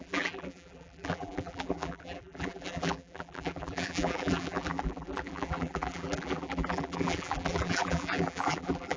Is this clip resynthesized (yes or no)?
yes